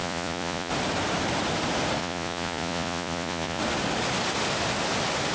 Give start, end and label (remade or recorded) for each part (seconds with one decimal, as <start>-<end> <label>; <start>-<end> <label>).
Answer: 0.0-0.7 remade; 0.7-2.0 recorded; 2.0-3.6 remade; 3.6-5.3 recorded

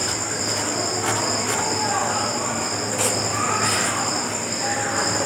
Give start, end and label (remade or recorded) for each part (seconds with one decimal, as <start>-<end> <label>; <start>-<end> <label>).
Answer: 0.0-5.3 recorded

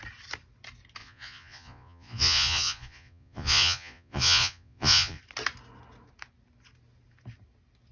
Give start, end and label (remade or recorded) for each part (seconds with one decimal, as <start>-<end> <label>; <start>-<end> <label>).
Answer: 0.0-1.0 recorded; 1.0-5.2 remade; 5.2-7.9 recorded